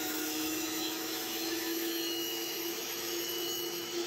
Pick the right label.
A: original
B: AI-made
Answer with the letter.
B